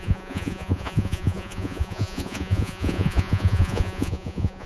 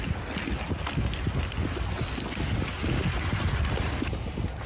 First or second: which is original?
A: second